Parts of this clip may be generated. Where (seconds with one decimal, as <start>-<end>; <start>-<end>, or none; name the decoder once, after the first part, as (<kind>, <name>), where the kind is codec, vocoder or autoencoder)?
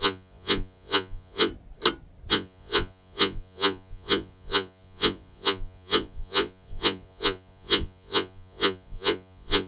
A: 0.0-1.5 (vocoder, Vocos); 2.3-9.7